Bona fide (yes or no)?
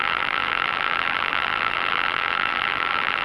no